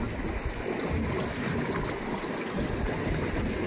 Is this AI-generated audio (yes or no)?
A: no